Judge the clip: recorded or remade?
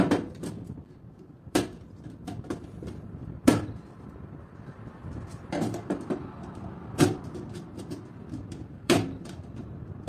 remade